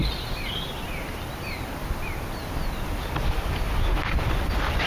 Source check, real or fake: real